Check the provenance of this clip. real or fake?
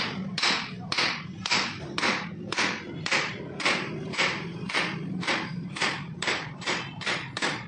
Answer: fake